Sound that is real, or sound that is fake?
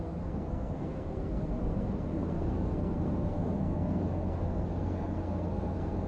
fake